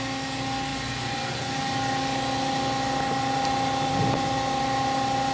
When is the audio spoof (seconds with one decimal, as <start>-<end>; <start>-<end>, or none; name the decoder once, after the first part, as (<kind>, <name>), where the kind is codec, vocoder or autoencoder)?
none